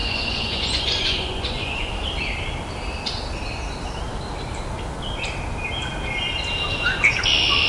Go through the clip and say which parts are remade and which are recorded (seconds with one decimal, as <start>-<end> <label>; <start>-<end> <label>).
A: 0.0-1.9 remade; 1.9-7.7 recorded